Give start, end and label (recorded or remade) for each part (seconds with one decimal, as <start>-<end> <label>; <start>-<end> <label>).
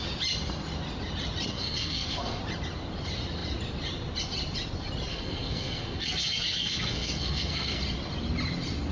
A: 0.0-1.5 recorded; 1.5-2.4 remade; 2.4-5.1 recorded; 5.1-7.8 remade; 7.8-8.9 recorded